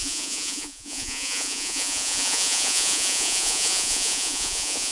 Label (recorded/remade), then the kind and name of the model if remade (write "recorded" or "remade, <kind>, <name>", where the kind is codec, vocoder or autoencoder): remade, vocoder, Vocos